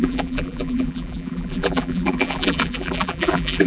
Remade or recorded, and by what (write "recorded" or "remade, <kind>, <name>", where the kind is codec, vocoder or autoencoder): remade, vocoder, BigVGAN v2